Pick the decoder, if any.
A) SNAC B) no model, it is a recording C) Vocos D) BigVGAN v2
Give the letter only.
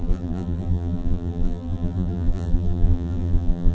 D